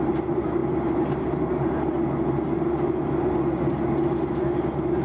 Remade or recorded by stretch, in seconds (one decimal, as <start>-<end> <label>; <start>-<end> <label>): 0.0-5.0 recorded